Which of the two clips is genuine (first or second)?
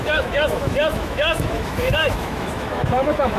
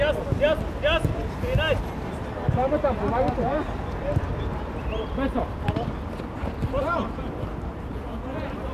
second